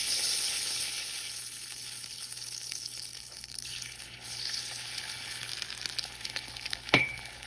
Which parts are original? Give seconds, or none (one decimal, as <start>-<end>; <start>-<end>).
5.5-6.0